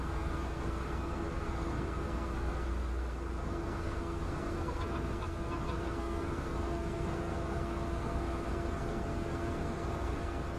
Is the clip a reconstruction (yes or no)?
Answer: yes